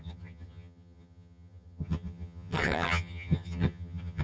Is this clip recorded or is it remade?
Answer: remade